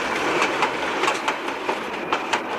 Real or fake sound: real